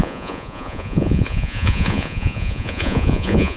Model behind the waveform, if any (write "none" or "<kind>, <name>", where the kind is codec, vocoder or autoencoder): vocoder, Vocos